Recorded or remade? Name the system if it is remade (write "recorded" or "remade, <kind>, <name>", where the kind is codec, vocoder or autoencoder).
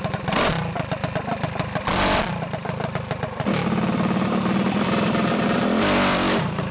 remade, vocoder, BigVGAN v2